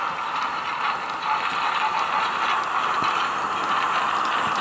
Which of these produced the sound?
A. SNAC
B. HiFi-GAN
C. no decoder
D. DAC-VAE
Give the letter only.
C